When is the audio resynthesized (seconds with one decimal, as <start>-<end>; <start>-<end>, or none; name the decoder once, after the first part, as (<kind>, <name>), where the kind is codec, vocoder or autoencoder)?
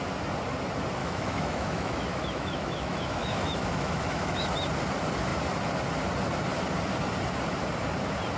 1.0-4.5 (autoencoder, DAC-VAE)